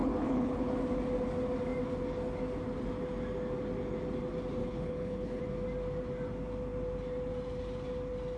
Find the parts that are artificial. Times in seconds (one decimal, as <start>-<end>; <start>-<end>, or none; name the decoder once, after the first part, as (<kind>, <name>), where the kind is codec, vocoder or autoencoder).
0.0-0.7 (codec, HILCodec); 4.6-5.4